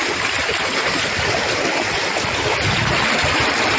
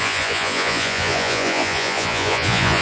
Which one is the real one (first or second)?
first